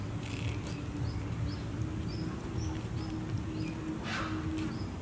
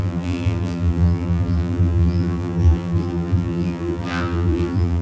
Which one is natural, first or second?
first